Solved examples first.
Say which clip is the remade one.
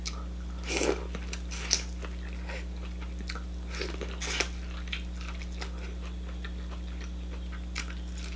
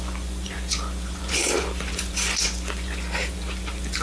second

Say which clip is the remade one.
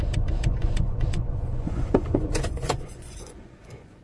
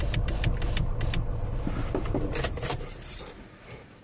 first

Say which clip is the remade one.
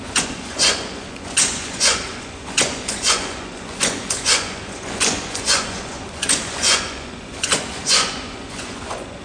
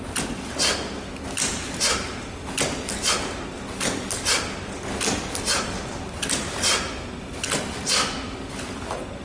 first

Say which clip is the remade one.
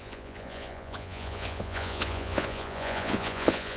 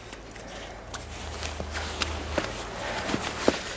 first